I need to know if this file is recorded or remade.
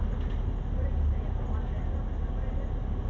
recorded